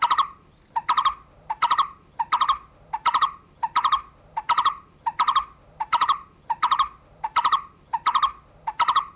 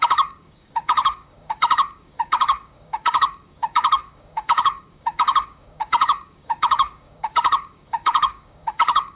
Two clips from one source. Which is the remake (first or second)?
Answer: second